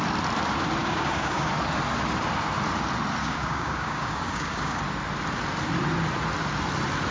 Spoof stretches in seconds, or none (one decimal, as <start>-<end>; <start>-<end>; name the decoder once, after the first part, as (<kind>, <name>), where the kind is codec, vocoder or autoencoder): 0.8-1.5 (codec, DAC); 3.2-4.8